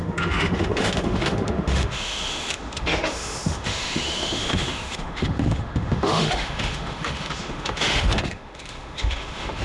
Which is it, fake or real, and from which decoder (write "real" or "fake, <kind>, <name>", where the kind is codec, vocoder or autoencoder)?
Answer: fake, autoencoder, DAC-VAE